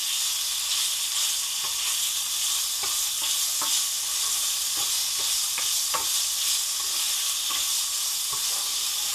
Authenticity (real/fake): real